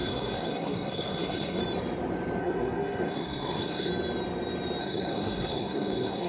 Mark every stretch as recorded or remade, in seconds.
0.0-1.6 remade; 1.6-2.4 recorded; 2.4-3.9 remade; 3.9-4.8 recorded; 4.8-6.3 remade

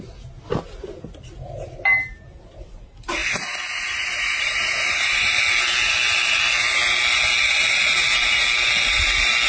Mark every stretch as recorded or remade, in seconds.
0.0-3.2 recorded; 3.2-5.4 remade; 5.4-9.5 recorded

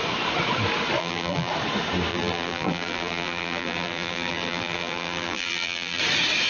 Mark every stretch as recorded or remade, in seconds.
0.0-1.0 recorded; 1.0-1.5 remade; 1.5-2.1 recorded; 2.1-6.0 remade; 6.0-6.5 recorded

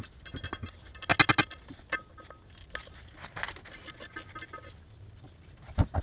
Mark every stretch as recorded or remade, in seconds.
0.0-6.0 recorded

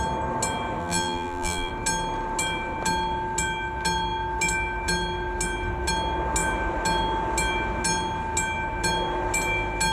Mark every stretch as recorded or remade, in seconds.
0.0-0.8 recorded; 0.8-1.7 remade; 1.7-9.9 recorded

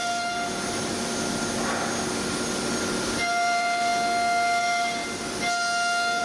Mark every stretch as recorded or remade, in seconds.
0.0-2.1 recorded; 2.1-3.9 remade; 3.9-4.6 recorded; 4.6-5.0 remade; 5.0-6.2 recorded